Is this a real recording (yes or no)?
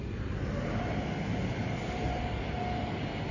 yes